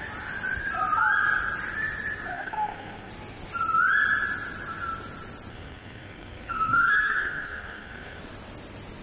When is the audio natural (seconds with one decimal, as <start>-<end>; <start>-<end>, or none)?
0.0-2.3; 3.1-5.5; 8.2-9.0